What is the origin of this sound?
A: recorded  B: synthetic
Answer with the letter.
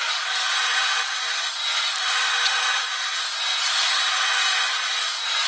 A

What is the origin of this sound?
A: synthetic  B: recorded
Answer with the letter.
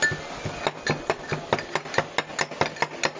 B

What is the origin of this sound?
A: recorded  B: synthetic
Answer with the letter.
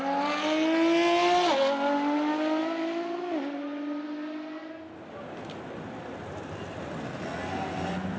A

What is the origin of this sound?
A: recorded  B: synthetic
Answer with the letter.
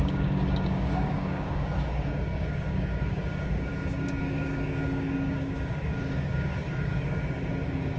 B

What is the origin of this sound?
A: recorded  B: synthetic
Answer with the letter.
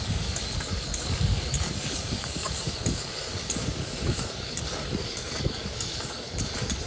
B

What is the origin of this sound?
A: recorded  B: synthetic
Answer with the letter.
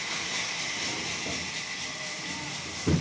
A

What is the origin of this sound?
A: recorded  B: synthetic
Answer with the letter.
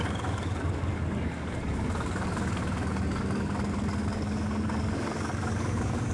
B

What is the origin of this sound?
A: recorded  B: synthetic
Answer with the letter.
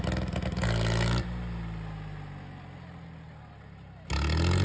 A